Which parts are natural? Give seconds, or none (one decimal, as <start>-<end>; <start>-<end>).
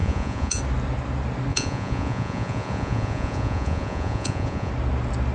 0.6-1.5; 4.7-5.3